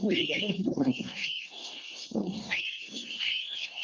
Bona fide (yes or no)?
no